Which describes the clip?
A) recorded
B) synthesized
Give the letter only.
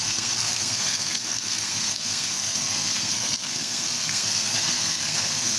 B